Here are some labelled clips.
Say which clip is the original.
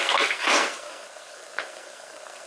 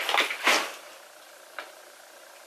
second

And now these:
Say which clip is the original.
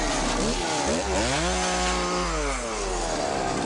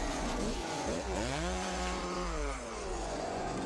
first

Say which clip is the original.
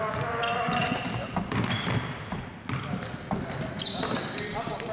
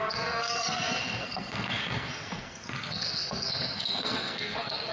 first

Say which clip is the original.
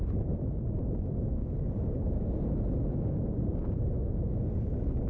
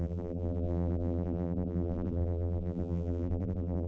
first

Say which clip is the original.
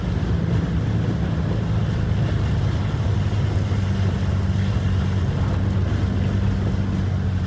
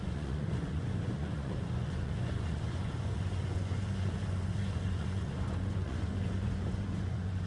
first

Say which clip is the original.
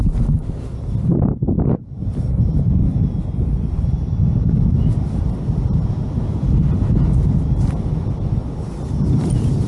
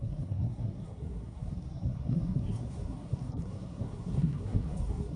first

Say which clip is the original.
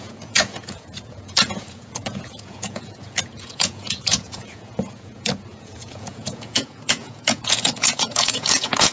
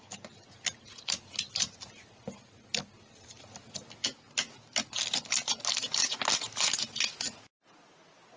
second